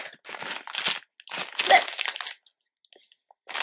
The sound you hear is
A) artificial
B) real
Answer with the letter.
B